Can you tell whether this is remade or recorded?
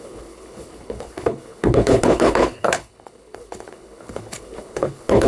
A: remade